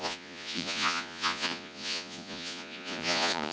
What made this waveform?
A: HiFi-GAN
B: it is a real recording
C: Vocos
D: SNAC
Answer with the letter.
C